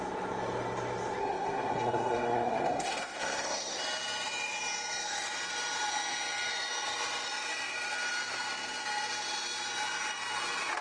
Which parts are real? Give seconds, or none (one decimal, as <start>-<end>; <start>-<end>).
0.0-1.2; 3.8-10.8